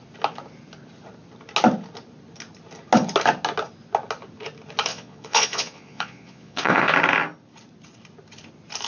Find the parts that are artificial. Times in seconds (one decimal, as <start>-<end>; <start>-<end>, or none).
4.9-6.9